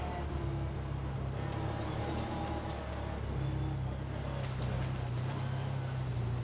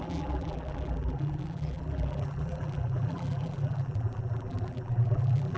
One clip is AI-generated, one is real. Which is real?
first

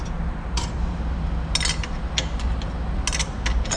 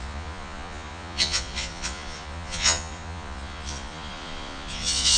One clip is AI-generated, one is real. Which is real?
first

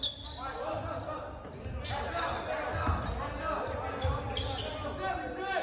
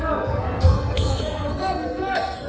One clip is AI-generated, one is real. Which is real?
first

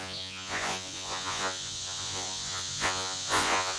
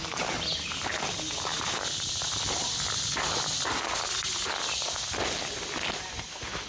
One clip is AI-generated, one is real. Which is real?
second